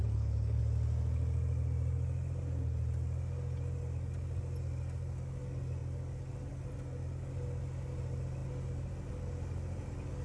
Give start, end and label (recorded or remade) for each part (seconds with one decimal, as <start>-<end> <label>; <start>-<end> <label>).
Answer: 0.0-0.6 remade; 0.6-10.2 recorded